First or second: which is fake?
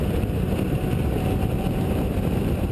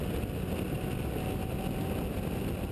first